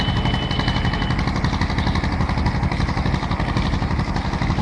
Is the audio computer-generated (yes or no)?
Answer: no